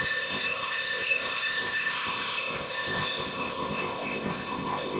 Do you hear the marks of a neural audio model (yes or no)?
yes